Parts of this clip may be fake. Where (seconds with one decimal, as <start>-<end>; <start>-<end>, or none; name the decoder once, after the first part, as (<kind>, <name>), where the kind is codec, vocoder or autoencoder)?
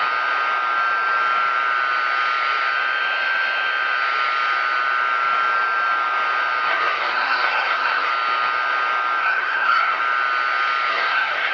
6.7-8.1 (codec, SNAC); 9.2-10.0; 10.9-11.5